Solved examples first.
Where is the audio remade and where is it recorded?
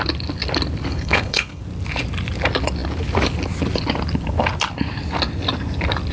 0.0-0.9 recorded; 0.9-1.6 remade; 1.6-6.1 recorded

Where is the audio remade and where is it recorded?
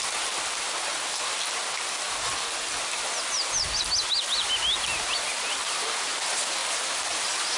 0.0-7.6 recorded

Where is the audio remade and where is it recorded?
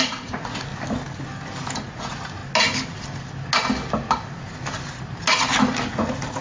0.0-0.7 remade; 0.7-1.9 recorded; 1.9-2.4 remade; 2.4-5.9 recorded; 5.9-6.4 remade